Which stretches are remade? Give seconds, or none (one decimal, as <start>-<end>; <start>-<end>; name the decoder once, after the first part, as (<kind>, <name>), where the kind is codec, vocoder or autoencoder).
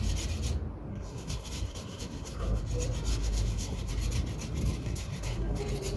0.9-2.6 (codec, SNAC); 3.1-3.9; 4.8-5.6